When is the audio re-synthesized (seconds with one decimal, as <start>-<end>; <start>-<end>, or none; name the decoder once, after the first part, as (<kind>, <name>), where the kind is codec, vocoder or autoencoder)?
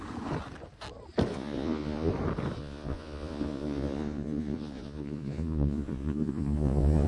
1.3-2.1 (vocoder, Vocos); 2.6-7.1